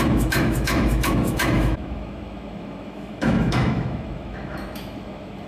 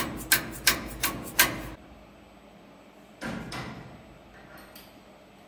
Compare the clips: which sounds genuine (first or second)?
second